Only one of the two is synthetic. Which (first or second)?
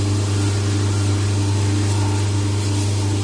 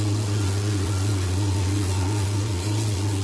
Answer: second